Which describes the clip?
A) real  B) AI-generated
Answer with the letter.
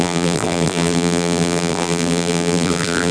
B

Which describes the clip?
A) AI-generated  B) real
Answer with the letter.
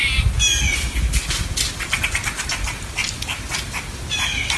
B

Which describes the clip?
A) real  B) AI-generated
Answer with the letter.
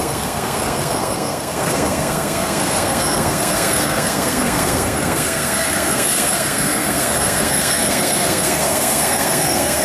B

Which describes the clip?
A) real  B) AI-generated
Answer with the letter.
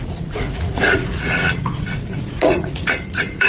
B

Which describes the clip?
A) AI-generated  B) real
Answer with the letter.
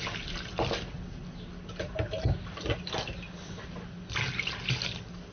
B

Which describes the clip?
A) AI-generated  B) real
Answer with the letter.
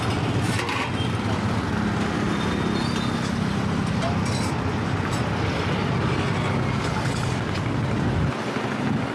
B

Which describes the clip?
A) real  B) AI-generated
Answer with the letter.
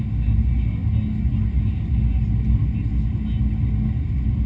A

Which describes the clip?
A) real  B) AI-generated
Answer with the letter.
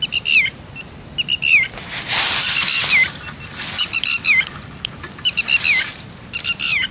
A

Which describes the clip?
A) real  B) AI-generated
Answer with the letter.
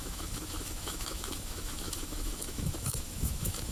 B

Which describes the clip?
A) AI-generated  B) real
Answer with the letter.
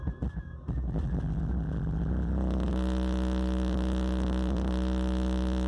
B